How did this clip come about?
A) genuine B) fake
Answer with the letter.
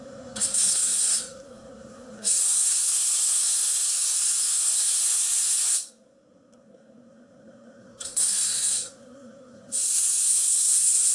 B